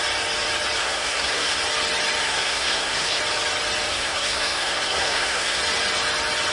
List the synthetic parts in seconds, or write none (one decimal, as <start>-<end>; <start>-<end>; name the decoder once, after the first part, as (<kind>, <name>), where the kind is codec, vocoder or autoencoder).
0.8-1.6 (codec, SNAC); 2.2-3.2; 3.9-5.6